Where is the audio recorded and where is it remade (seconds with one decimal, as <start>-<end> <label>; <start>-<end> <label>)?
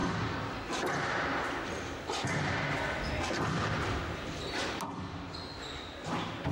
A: 0.0-6.5 recorded